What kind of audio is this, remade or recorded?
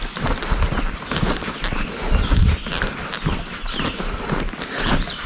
recorded